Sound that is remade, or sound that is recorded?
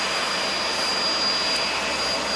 recorded